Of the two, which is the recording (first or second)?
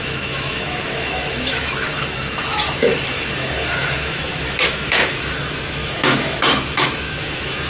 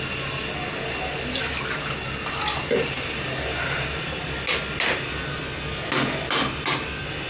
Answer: second